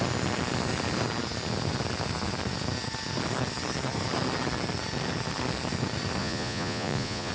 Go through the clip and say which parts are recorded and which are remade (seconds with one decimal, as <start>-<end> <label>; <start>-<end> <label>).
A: 0.0-6.2 recorded; 6.2-7.3 remade